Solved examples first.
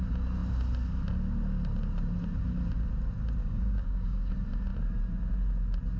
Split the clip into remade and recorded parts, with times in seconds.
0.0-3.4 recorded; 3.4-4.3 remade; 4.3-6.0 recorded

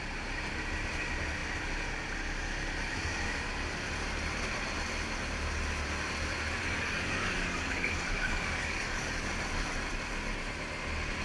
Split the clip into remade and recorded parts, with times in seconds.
0.0-6.6 recorded; 6.6-9.3 remade; 9.3-11.2 recorded